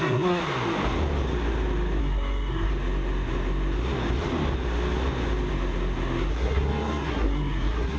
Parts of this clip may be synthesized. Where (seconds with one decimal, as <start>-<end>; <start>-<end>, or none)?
0.0-0.4; 2.0-2.7; 6.3-8.0